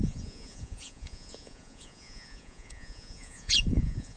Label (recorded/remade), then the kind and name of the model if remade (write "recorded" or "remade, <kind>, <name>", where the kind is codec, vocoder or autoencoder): remade, vocoder, Vocos